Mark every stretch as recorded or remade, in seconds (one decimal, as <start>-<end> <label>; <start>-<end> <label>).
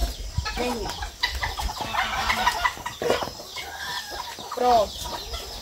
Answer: 0.0-5.6 recorded